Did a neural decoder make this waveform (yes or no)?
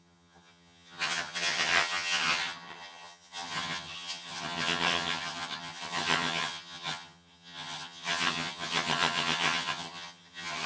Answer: yes